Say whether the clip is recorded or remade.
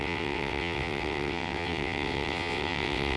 remade